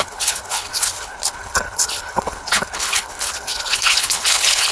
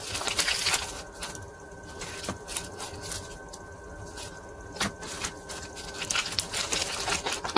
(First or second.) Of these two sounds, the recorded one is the second